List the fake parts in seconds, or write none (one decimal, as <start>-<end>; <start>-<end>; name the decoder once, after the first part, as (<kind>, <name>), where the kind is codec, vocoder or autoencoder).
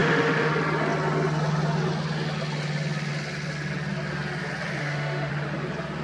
0.0-0.5 (autoencoder, DAC-VAE); 4.8-5.3